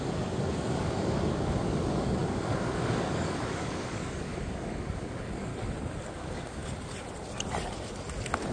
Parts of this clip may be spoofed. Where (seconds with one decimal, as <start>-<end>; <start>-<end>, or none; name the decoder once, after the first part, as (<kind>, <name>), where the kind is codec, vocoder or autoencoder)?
0.0-5.5 (codec, DAC); 6.1-6.6